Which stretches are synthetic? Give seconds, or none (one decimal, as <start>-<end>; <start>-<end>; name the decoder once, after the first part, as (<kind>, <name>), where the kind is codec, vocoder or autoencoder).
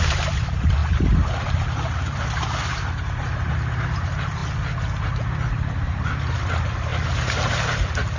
0.0-4.4 (vocoder, BigVGAN v2); 5.5-6.9; 7.5-8.2